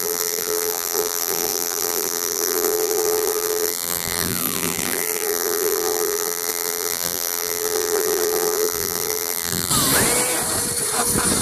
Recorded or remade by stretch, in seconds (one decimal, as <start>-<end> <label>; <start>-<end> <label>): 0.0-9.7 remade; 9.7-11.4 recorded